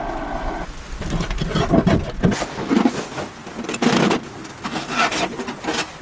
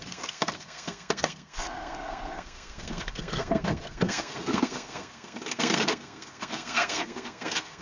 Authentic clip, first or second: first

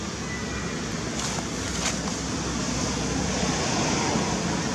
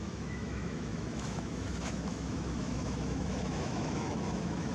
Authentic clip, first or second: first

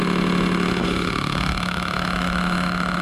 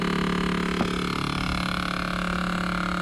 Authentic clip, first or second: second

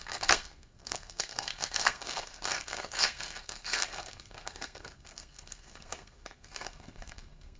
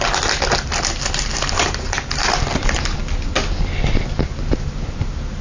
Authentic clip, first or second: second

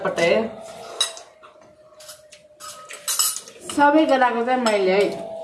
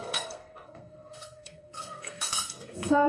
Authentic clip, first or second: first